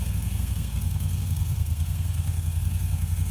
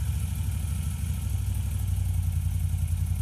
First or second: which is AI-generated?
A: first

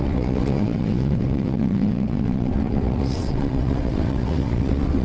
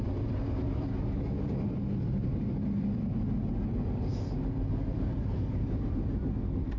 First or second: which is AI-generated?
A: first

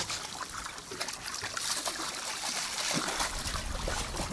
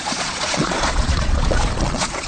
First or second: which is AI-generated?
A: second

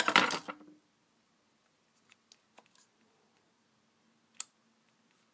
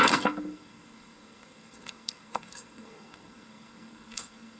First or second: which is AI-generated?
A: second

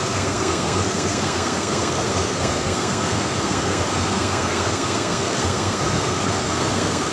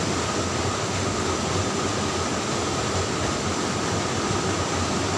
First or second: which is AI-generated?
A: first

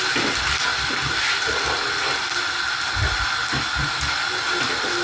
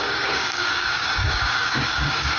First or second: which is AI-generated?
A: second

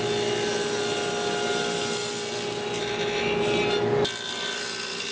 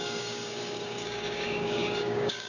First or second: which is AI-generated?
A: second